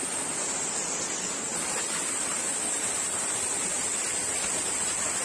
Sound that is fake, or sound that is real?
real